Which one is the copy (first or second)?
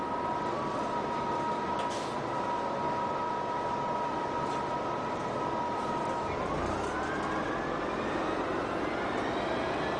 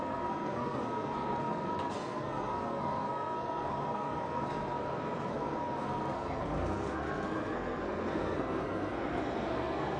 second